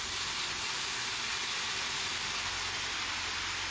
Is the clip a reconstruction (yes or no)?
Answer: yes